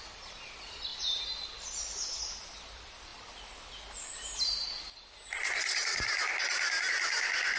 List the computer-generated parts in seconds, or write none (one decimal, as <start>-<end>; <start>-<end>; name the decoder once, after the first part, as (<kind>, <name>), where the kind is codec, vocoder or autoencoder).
0.0-0.9 (vocoder, BigVGAN v2); 2.2-3.1; 6.9-7.6